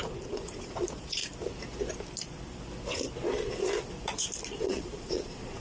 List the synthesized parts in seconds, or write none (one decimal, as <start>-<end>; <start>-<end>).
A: 0.0-1.2; 4.6-5.6

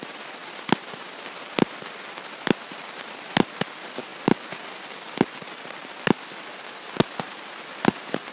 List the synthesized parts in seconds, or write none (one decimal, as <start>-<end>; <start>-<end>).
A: none

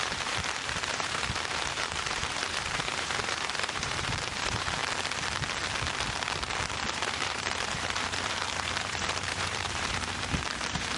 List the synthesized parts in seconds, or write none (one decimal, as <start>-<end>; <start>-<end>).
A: 0.0-4.8; 6.9-11.0

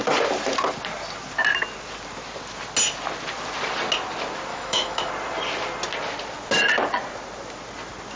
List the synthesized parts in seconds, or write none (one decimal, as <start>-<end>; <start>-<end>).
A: 4.5-5.1

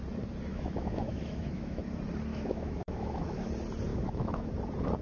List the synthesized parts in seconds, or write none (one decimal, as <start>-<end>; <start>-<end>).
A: 0.5-1.8; 2.3-3.5; 3.9-4.5

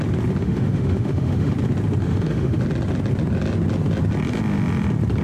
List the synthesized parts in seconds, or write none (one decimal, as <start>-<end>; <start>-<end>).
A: 0.4-1.5; 2.0-2.6

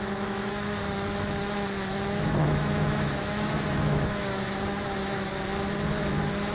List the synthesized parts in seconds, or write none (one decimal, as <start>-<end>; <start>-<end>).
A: 0.0-5.3; 6.1-6.5

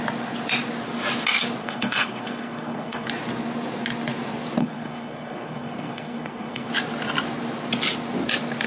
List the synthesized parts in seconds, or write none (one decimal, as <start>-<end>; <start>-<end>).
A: 1.6-3.1; 4.6-6.7